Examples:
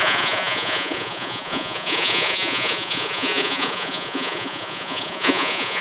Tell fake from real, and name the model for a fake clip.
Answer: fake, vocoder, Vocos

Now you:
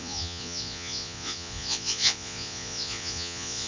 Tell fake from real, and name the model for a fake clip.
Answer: fake, vocoder, Vocos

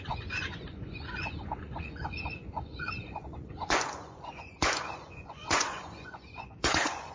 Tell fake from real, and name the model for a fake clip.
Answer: fake, vocoder, Vocos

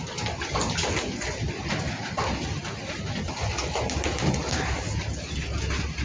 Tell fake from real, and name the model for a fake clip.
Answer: real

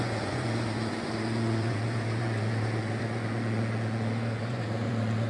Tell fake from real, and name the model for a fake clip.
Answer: fake, vocoder, Vocos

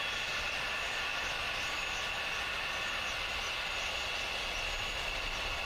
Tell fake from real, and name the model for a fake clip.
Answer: real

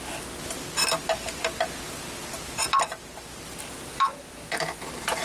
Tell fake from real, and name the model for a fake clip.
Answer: real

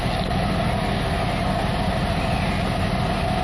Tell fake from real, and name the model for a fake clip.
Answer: real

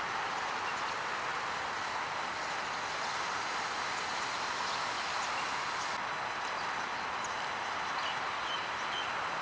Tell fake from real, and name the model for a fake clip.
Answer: real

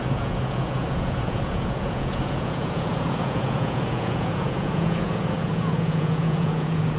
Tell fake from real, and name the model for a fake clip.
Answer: fake, vocoder, Vocos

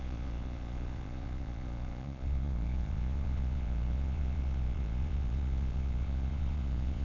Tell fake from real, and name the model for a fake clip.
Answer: fake, vocoder, Vocos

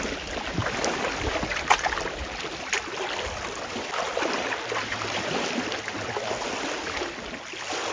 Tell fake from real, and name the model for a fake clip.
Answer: real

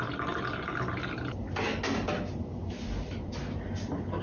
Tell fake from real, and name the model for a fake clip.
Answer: real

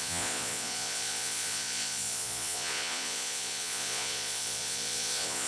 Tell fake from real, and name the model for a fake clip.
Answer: fake, vocoder, Vocos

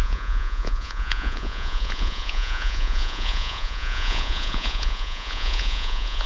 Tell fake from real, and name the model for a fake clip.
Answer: fake, vocoder, Vocos